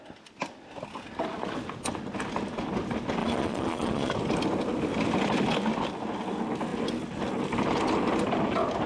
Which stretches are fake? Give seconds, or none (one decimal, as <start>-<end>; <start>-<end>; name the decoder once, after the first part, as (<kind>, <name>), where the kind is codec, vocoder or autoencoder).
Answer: 3.2-4.1 (vocoder, Vocos)